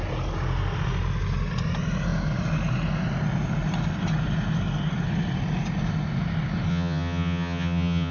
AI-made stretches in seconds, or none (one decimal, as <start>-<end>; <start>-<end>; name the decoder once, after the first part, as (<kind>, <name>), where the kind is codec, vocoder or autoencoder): 6.7-8.1 (vocoder, HiFi-GAN)